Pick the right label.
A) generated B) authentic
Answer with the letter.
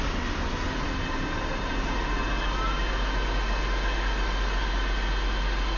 B